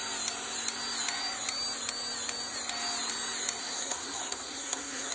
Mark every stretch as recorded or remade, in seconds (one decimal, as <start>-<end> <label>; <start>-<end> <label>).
0.0-3.6 recorded; 3.6-5.1 remade